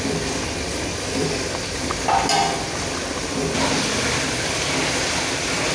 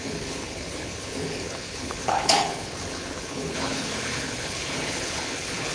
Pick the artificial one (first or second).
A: second